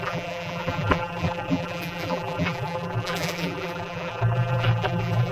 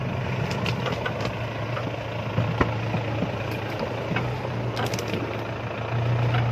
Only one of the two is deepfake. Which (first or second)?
first